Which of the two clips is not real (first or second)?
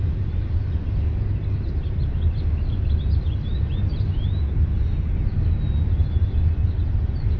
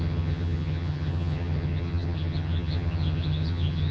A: second